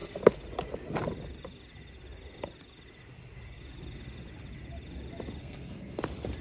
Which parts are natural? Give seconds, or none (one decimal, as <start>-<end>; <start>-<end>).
0.0-5.4; 6.0-6.4